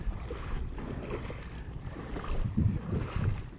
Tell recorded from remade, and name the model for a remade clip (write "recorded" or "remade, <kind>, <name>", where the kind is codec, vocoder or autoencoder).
recorded